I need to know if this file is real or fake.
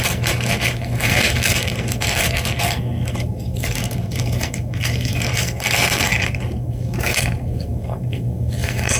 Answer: fake